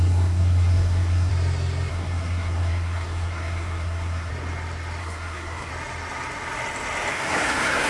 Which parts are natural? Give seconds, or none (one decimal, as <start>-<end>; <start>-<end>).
1.3-1.9; 4.3-5.0; 5.7-7.1

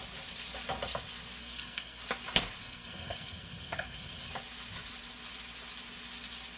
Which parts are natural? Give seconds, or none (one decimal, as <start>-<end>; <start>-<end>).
0.0-1.4; 2.0-2.6; 4.3-6.6

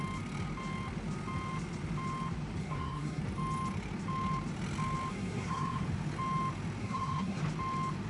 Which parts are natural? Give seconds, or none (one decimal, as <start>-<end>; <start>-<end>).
0.0-2.6; 3.2-5.1; 5.8-6.8; 7.4-8.1

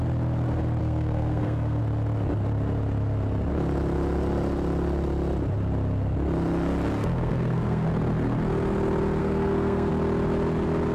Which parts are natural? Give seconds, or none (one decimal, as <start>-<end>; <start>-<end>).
0.0-0.8; 1.8-7.0; 7.9-9.2; 9.9-10.9